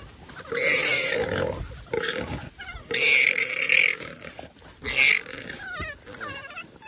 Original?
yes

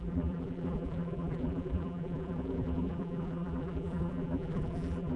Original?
no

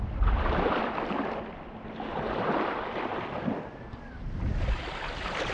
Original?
yes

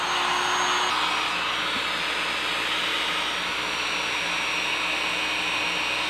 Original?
yes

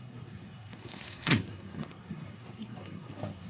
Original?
no